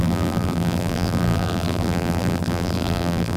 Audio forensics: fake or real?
fake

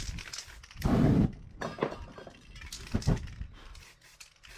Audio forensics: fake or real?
real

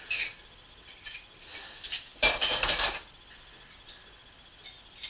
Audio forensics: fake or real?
real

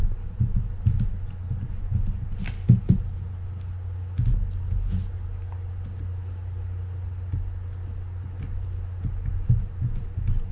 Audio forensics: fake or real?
real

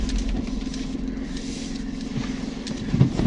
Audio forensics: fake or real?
real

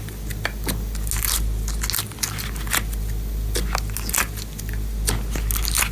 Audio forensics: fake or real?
real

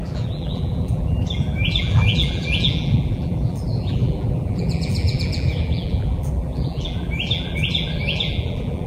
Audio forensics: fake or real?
fake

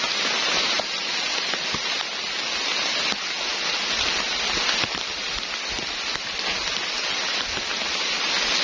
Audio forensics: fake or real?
real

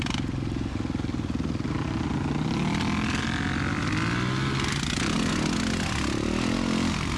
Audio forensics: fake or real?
real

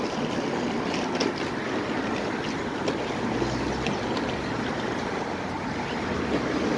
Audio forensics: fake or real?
real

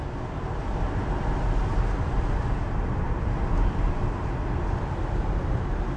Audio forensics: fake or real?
real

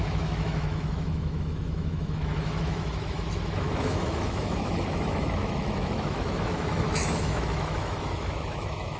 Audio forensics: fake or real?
fake